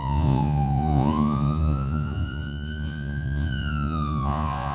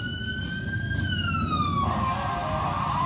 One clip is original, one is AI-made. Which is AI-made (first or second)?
first